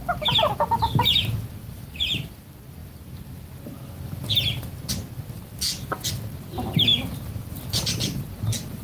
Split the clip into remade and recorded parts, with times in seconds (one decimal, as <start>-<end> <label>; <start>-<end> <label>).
0.0-1.6 recorded; 1.6-2.4 remade; 2.4-8.8 recorded